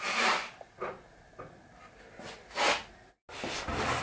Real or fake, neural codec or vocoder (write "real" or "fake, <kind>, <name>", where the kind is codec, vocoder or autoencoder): real